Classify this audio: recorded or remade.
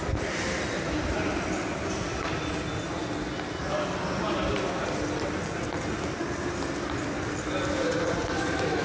recorded